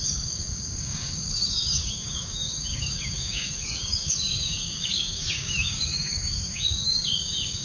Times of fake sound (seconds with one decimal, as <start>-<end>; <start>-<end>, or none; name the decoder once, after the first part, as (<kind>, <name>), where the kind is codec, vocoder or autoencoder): 0.0-7.6 (codec, DAC)